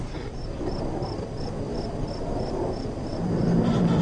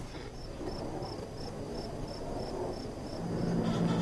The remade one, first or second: first